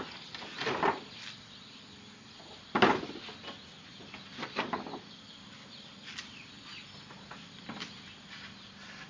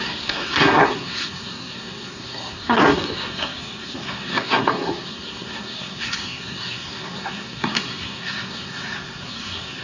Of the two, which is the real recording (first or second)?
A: first